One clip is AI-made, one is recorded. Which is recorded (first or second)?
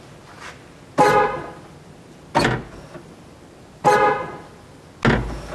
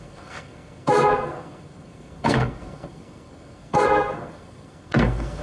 first